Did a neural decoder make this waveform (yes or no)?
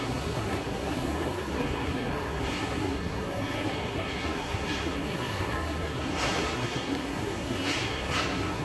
yes